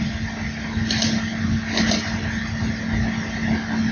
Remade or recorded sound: recorded